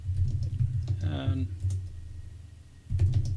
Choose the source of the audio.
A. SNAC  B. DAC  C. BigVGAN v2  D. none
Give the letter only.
D